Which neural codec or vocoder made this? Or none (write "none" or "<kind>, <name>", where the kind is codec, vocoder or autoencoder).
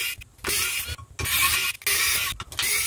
none